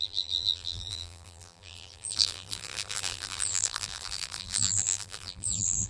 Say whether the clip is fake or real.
fake